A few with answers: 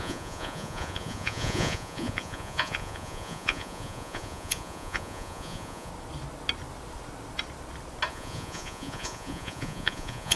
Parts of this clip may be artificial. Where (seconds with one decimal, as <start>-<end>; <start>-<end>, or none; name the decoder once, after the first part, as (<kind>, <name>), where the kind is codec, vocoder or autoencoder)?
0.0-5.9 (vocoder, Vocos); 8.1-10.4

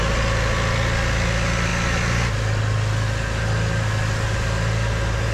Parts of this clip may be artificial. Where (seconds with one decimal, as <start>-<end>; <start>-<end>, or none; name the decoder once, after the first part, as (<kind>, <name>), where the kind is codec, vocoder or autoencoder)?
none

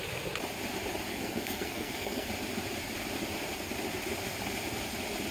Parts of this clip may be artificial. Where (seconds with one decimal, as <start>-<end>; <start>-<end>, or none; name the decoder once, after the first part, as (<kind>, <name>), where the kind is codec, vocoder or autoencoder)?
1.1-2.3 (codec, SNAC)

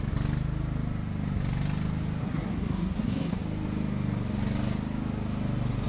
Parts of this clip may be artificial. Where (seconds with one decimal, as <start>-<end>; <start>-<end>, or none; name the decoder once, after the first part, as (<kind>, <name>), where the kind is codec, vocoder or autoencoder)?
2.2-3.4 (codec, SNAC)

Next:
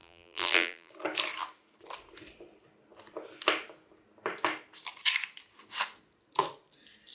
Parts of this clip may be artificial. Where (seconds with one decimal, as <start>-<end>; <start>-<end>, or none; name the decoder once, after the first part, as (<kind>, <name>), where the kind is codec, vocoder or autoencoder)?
0.0-0.9 (vocoder, BigVGAN v2)

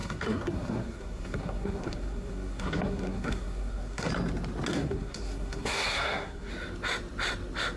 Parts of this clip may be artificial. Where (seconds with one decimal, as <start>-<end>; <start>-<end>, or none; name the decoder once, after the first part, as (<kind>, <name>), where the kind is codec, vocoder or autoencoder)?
0.0-4.1 (codec, SNAC); 4.7-6.5